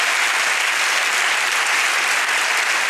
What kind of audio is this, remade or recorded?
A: recorded